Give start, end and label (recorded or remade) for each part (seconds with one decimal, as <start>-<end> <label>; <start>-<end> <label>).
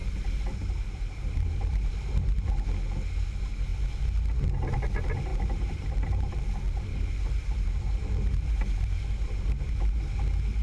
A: 0.0-2.5 remade; 2.5-5.3 recorded; 5.3-10.0 remade; 10.0-10.6 recorded